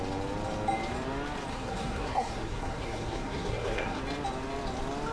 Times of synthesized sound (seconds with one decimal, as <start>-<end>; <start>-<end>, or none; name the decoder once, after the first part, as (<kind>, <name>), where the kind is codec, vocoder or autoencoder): 1.5-4.0 (codec, SNAC)